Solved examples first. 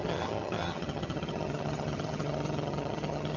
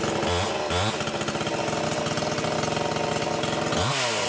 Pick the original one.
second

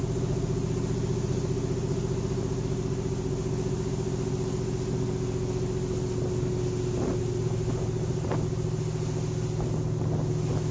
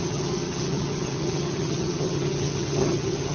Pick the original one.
first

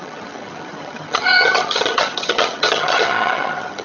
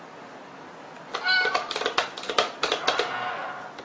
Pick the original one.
second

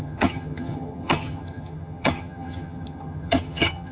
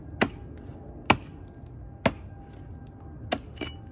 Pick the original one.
second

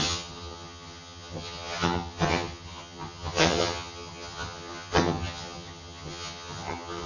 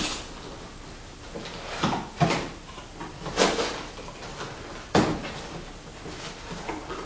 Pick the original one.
second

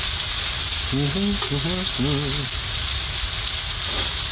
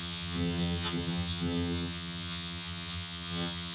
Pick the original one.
first